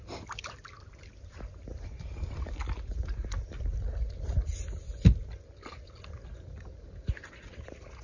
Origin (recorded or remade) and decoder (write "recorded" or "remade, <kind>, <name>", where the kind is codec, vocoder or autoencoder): recorded